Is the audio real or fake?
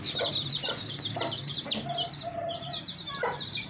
fake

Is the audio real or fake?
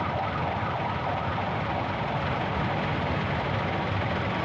real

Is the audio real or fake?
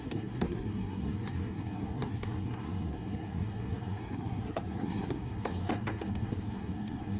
fake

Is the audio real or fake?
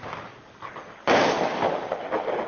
real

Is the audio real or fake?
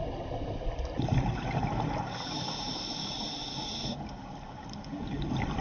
real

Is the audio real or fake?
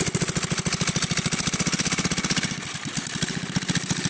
real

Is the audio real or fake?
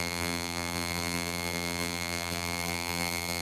fake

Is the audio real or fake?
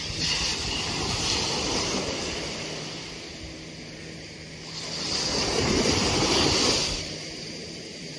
real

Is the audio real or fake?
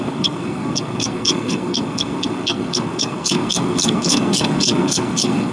fake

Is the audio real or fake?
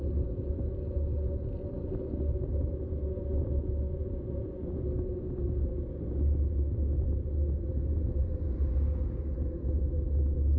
real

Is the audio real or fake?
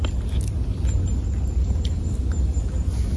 real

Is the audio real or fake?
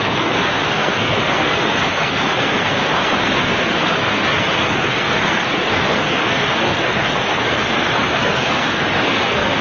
fake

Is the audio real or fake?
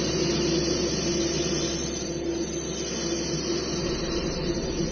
real